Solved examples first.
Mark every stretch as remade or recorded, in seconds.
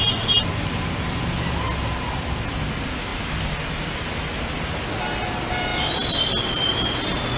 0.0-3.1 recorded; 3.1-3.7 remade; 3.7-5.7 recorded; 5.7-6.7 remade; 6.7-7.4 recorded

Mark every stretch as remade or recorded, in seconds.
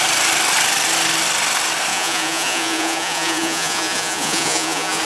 0.0-1.9 recorded; 1.9-5.0 remade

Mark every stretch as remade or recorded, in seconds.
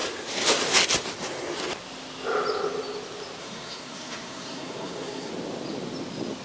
0.0-3.4 recorded; 3.4-5.3 remade; 5.3-6.4 recorded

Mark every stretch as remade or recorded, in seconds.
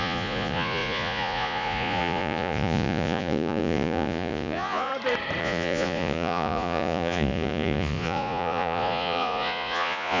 0.0-4.9 remade; 4.9-5.4 recorded; 5.4-10.2 remade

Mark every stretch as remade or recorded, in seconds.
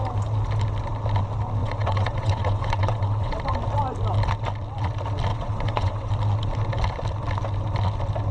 0.0-1.6 recorded; 1.6-3.4 remade; 3.4-5.3 recorded; 5.3-6.1 remade; 6.1-8.3 recorded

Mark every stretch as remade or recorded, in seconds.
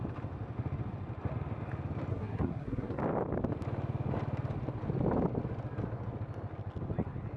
0.0-2.1 recorded; 2.1-3.0 remade; 3.0-7.4 recorded